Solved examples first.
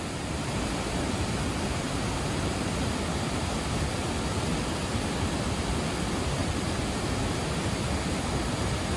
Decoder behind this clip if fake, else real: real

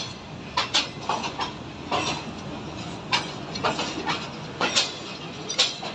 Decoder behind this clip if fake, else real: fake, vocoder, Vocos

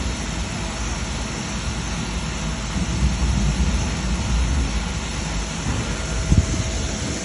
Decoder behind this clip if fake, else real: real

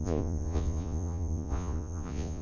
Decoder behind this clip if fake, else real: fake, vocoder, Vocos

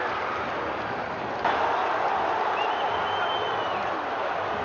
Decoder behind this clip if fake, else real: real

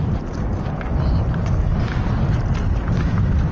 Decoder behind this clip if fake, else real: real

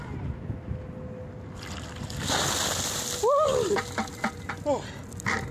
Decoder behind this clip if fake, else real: real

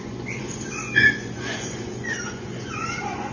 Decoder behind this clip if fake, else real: fake, vocoder, Vocos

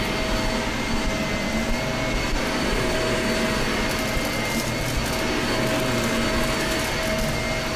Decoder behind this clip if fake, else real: real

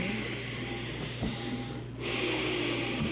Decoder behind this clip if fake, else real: real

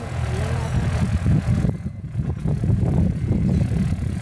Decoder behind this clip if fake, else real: fake, vocoder, Vocos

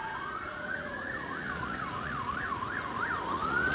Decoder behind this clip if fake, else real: fake, vocoder, Vocos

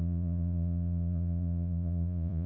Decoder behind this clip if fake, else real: fake, vocoder, Vocos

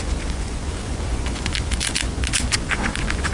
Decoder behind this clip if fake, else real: fake, vocoder, Vocos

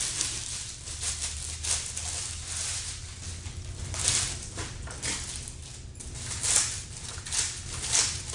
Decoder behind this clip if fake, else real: real